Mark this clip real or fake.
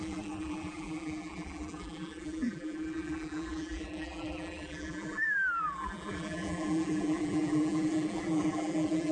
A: fake